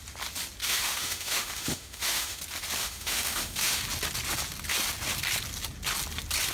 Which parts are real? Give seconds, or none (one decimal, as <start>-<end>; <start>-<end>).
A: 0.0-0.6; 2.4-2.8; 3.8-6.5